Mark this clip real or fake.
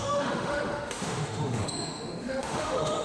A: fake